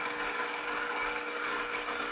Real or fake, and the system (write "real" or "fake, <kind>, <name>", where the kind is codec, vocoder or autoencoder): fake, codec, DAC